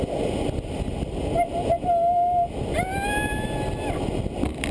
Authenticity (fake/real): real